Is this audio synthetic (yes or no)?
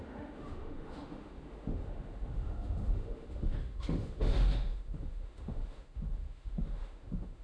yes